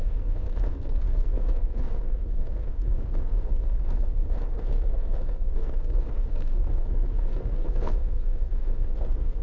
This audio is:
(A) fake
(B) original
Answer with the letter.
A